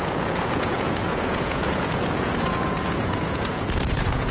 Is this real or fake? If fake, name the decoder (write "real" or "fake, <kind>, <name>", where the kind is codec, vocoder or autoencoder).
fake, vocoder, Vocos